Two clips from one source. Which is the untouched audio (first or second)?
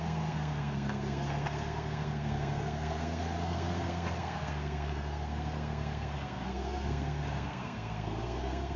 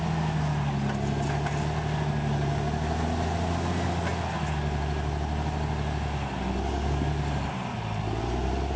second